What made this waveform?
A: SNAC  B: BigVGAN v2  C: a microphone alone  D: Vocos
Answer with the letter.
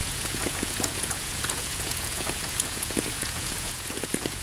D